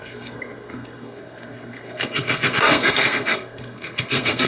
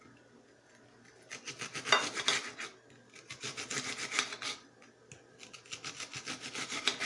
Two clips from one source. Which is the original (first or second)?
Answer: second